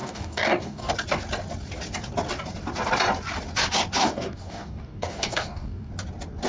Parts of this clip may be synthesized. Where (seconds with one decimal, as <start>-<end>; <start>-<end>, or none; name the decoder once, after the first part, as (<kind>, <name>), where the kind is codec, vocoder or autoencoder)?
0.0-0.9 (codec, DAC); 4.0-5.9